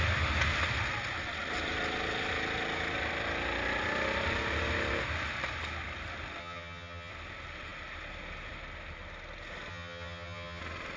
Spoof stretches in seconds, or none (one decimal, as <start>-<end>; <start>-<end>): 6.4-7.1; 9.7-10.6